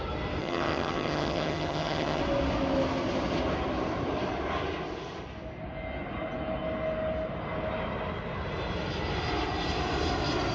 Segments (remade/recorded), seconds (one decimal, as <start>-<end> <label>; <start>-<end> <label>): 0.0-0.4 recorded; 0.4-2.2 remade; 2.2-10.5 recorded